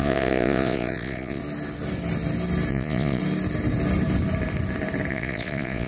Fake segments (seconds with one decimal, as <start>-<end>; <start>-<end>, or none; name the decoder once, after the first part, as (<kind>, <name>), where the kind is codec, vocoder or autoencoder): 0.0-1.4 (vocoder, Vocos); 2.7-3.2; 5.1-5.9